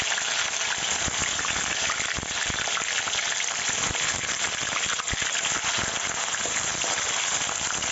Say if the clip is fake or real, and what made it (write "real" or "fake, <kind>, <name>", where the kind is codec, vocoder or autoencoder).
real